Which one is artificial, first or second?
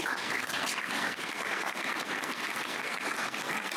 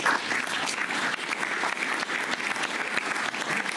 first